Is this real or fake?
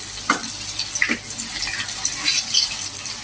real